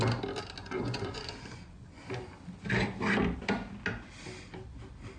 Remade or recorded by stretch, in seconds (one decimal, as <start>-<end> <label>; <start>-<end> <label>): 0.0-0.6 recorded; 0.6-2.0 remade; 2.0-5.2 recorded